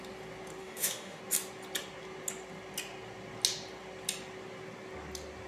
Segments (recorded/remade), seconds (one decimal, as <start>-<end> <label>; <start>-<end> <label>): 0.0-0.6 recorded; 0.6-1.2 remade; 1.2-5.5 recorded